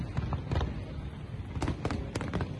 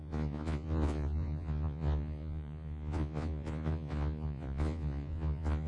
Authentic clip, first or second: first